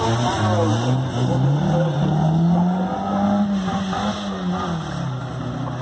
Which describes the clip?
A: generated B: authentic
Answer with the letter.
B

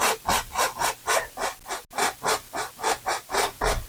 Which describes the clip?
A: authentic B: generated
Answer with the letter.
A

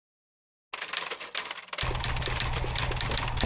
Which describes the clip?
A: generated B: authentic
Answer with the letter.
B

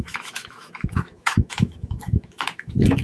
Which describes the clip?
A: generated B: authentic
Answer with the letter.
A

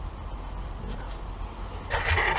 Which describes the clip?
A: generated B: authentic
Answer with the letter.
B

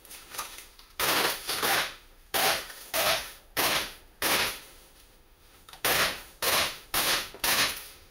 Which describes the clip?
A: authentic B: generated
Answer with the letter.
B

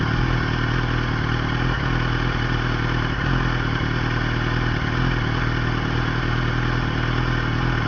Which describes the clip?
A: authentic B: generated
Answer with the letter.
A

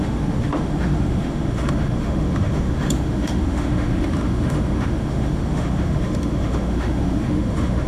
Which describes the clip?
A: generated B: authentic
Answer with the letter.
A